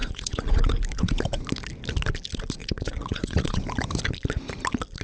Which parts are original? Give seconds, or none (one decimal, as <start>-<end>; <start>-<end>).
0.6-2.6; 3.6-5.0